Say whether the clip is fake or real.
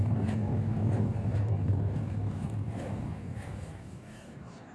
fake